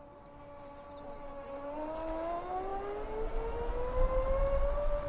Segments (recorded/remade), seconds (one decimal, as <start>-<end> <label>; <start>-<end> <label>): 0.0-5.1 recorded